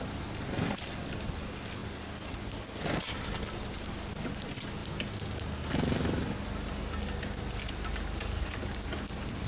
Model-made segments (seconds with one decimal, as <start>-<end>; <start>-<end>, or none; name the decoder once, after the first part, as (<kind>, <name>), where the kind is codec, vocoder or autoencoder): none